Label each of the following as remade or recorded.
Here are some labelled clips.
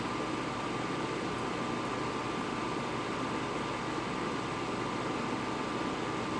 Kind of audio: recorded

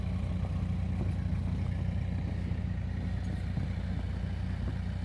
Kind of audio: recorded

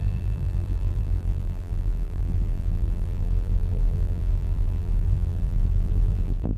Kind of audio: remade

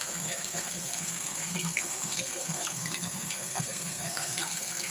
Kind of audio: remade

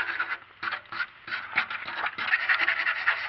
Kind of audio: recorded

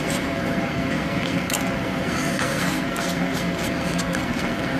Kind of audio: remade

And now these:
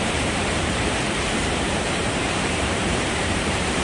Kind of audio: remade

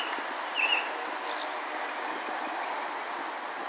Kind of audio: recorded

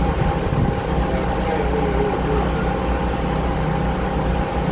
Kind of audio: recorded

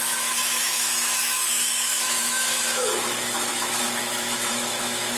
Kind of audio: remade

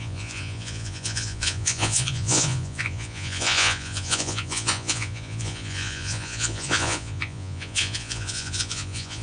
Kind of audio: remade